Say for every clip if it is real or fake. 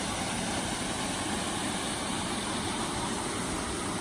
real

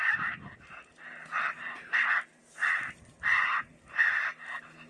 real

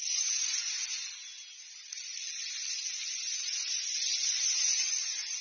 real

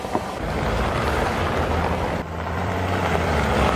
fake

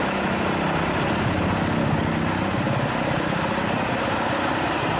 real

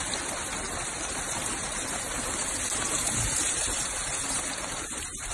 fake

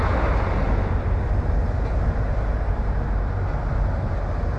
real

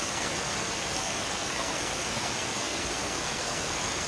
fake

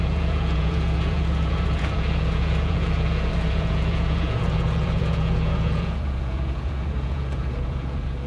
fake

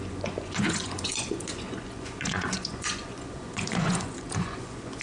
fake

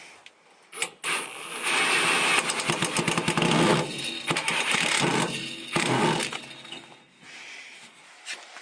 real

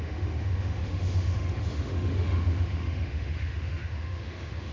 fake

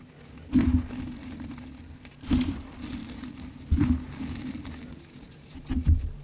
real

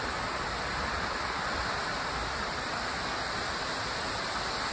real